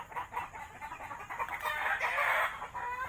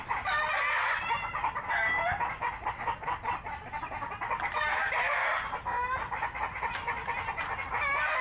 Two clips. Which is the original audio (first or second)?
second